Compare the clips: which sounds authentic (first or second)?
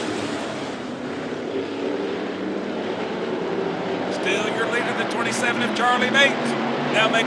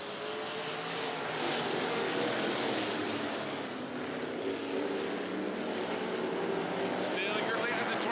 second